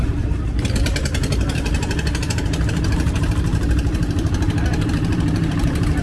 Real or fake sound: fake